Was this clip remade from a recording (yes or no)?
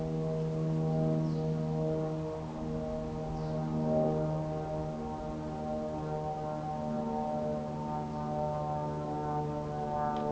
no